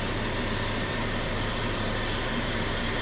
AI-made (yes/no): yes